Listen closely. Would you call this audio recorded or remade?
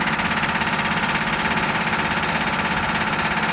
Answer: recorded